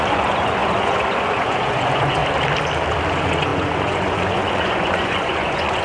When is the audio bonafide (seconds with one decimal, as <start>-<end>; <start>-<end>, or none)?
2.2-3.1